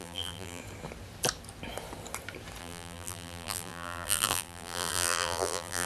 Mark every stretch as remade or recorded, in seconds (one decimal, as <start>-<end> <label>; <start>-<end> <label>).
0.0-0.6 remade; 0.6-2.6 recorded; 2.6-5.9 remade